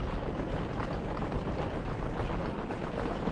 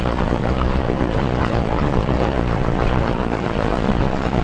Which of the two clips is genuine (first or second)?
first